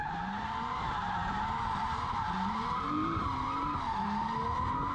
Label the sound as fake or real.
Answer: fake